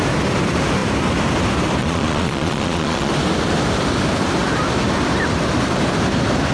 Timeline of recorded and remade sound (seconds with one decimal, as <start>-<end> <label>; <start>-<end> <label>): 0.0-1.8 recorded; 1.8-3.1 remade; 3.1-6.5 recorded